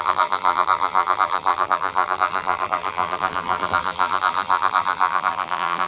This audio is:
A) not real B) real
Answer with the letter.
A